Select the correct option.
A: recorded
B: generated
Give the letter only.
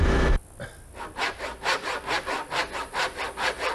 A